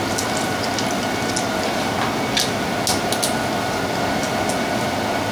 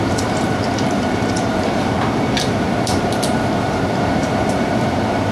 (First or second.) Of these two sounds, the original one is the first